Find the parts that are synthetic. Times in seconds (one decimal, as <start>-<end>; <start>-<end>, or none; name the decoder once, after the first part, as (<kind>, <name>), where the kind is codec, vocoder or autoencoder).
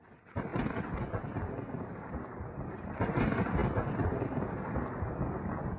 none